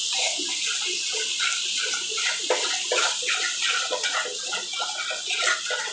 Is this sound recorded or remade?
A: recorded